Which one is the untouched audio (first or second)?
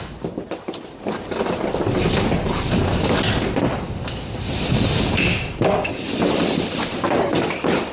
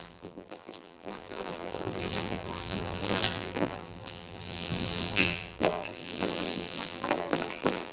first